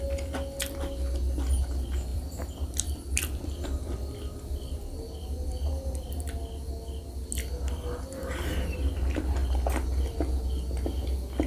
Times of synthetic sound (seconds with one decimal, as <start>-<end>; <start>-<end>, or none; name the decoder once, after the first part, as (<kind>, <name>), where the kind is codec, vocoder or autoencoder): 2.1-3.5 (vocoder, BigVGAN v2)